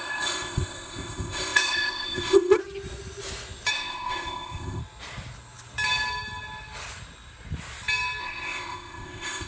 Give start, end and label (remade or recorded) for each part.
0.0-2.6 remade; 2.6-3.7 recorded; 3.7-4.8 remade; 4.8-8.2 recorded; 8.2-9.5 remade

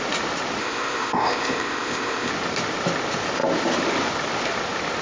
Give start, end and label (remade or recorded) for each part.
0.0-0.6 recorded; 0.6-2.3 remade; 2.3-5.0 recorded